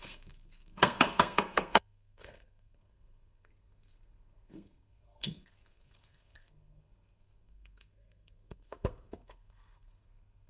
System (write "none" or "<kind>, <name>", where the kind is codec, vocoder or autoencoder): codec, SNAC